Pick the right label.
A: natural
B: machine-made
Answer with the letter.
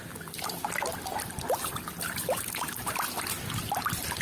A